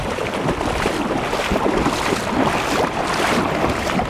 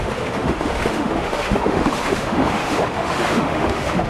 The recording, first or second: first